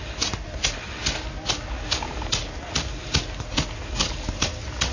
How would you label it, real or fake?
real